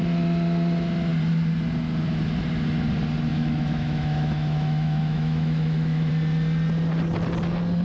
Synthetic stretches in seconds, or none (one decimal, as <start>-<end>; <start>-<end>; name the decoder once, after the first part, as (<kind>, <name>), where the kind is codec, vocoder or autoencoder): 3.3-6.1 (autoencoder, DAC-VAE)

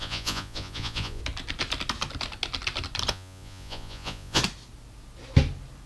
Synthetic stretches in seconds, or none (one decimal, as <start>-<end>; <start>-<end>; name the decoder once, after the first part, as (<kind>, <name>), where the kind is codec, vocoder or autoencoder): 0.0-1.2 (vocoder, Vocos); 3.1-4.4

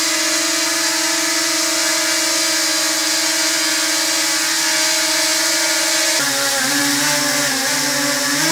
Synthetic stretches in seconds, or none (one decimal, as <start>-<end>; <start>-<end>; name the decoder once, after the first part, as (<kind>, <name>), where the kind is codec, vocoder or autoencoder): 5.3-6.8 (vocoder, BigVGAN v2)